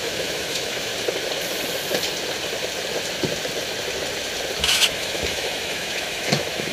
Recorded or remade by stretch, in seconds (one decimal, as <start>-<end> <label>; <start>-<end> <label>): 0.0-0.9 remade; 0.9-4.6 recorded; 4.6-6.7 remade